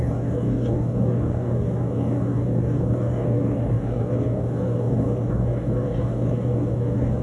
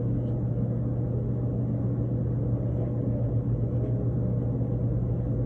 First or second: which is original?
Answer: second